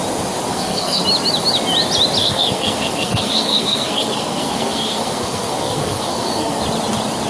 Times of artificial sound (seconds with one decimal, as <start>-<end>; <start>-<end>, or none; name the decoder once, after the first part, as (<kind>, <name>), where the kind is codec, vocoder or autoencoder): 0.5-1.0 (codec, SNAC); 2.2-6.6